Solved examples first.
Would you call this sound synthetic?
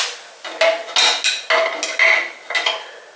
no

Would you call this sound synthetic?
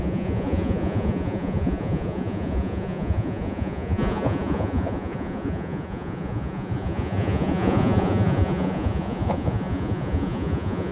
yes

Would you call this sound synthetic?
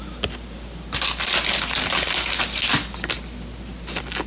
no